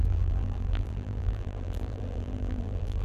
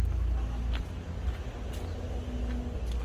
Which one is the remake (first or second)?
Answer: first